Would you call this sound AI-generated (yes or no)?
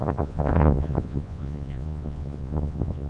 yes